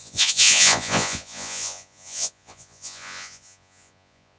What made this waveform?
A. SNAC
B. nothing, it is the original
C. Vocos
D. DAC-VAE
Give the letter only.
C